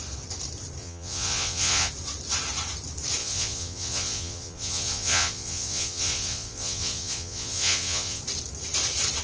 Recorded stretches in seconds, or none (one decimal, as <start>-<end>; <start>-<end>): 0.0-0.8; 1.9-3.2; 8.2-9.2